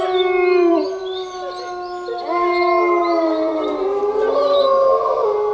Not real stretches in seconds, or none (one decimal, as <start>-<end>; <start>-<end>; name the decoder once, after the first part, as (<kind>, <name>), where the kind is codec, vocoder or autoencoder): 0.0-1.0 (vocoder, BigVGAN v2); 3.0-5.5